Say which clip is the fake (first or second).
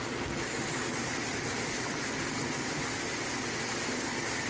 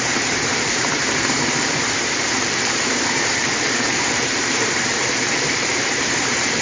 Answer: second